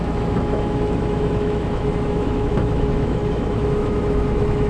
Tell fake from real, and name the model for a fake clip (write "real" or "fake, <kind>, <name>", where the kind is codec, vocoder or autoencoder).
fake, autoencoder, DAC-VAE